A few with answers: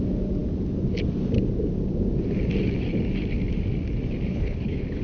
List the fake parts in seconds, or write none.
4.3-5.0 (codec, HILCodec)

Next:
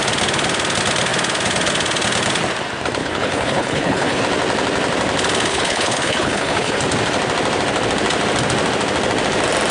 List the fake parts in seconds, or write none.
3.0-4.2 (codec, HILCodec); 5.5-6.8

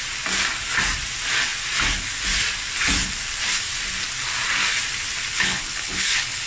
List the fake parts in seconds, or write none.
5.3-6.5 (codec, HILCodec)

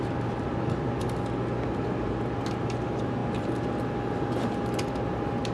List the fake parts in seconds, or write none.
none

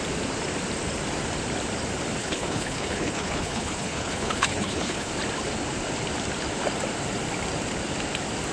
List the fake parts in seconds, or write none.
2.2-5.1 (codec, HILCodec)

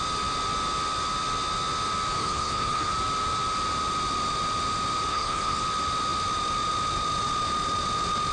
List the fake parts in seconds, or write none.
2.2-2.9 (codec, HILCodec); 5.1-5.6

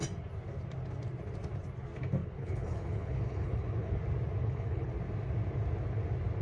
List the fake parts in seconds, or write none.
2.2-4.0 (codec, HILCodec); 4.4-4.9